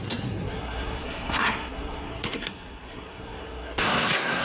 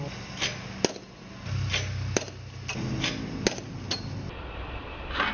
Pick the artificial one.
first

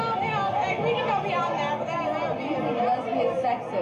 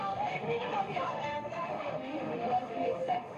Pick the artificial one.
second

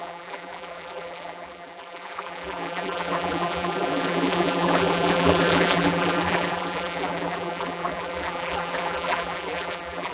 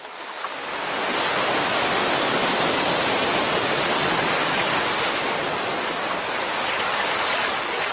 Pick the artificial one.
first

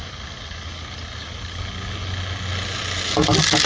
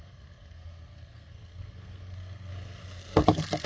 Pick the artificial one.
second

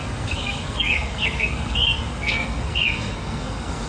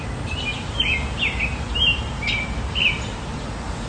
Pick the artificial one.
first